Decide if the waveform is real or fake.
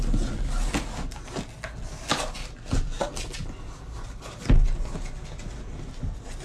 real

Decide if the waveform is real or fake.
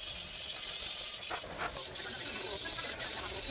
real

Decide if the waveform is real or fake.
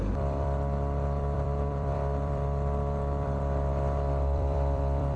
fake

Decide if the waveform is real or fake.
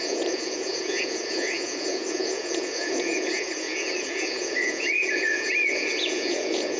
fake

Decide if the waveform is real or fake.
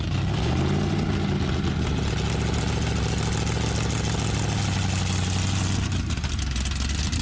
real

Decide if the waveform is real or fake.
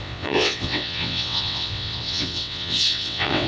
fake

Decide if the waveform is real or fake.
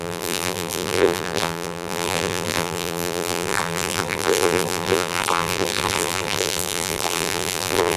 fake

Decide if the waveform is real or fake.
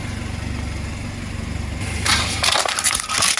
fake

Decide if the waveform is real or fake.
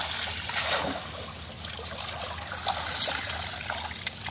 real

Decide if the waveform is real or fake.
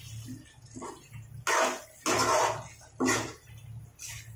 real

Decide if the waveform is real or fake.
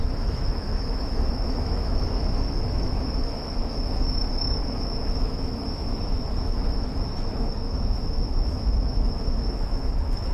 fake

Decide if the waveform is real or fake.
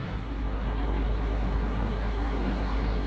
fake